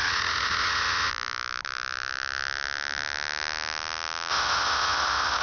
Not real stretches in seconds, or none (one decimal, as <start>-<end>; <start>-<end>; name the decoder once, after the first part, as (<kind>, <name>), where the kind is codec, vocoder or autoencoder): 0.0-1.1 (vocoder, HiFi-GAN); 4.3-5.4